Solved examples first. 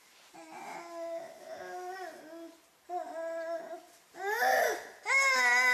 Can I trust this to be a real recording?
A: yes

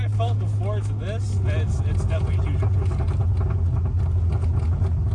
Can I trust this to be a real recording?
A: yes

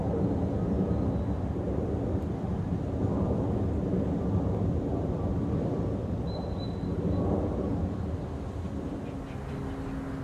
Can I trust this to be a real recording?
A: yes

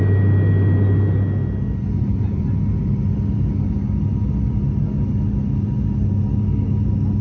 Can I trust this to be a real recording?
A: yes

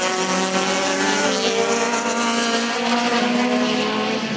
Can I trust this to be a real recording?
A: yes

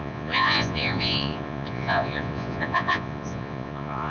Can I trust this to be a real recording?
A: no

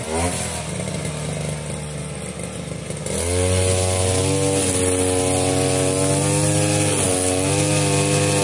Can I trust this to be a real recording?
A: yes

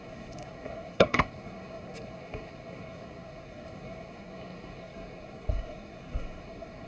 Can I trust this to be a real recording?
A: no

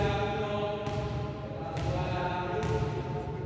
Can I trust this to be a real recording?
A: yes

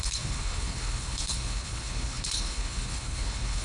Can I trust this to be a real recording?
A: no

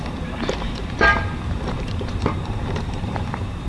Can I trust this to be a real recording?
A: no